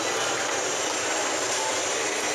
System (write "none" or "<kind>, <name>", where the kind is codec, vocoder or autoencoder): none